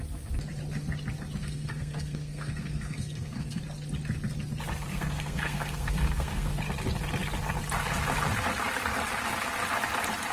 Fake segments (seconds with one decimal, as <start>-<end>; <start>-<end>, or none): 1.4-3.6; 4.9-6.6